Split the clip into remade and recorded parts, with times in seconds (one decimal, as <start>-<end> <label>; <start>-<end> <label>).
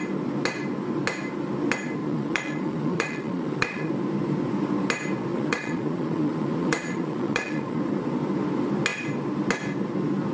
0.0-2.0 recorded; 2.0-3.9 remade; 3.9-5.3 recorded; 5.3-7.8 remade; 7.8-10.3 recorded